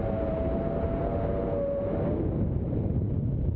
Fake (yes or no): no